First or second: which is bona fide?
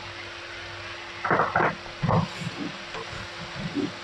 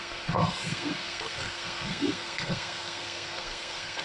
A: first